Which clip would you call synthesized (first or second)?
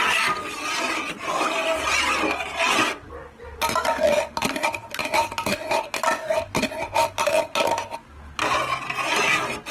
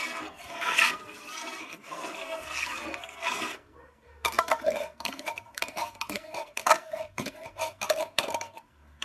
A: second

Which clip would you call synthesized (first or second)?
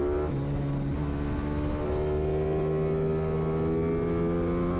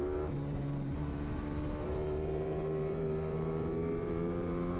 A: second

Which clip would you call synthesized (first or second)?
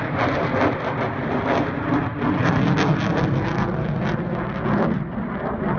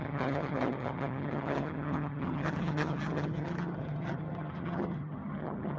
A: second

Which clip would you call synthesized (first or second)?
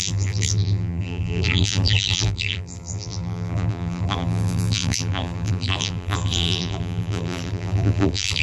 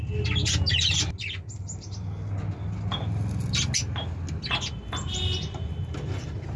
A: first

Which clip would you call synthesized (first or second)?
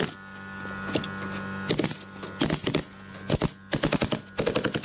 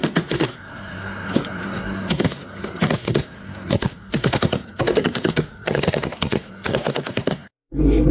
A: second